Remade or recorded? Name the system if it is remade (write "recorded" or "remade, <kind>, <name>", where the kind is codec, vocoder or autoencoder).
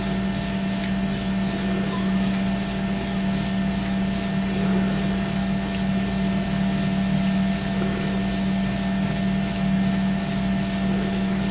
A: recorded